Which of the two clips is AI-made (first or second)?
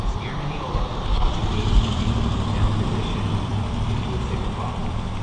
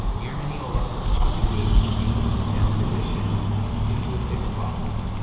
first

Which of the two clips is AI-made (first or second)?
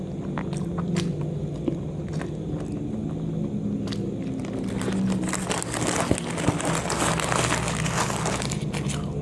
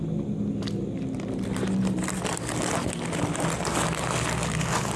second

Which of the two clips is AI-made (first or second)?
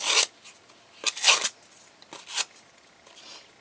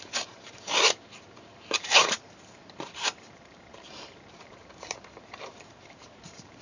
second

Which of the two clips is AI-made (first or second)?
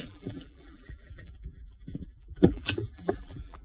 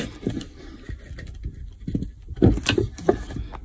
first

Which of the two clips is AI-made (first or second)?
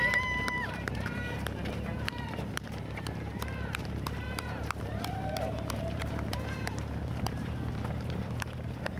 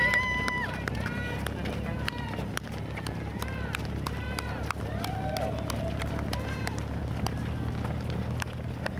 first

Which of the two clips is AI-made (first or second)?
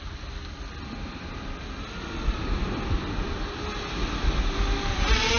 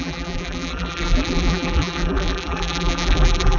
second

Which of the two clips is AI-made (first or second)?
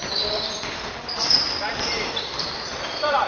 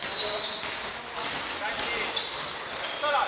first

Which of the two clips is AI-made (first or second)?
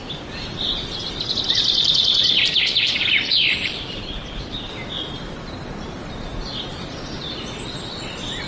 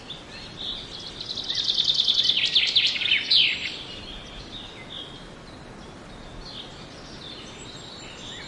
first